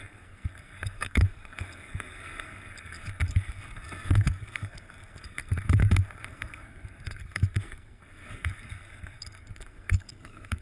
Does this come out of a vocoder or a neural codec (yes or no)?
yes